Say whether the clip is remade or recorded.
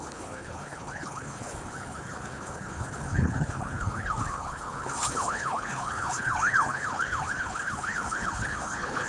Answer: remade